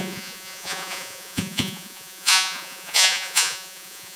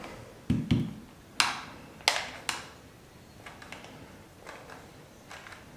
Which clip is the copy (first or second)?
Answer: first